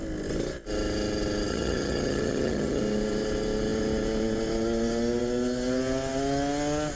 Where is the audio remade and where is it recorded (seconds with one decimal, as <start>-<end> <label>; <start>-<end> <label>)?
0.0-1.5 recorded; 1.5-2.8 remade; 2.8-7.0 recorded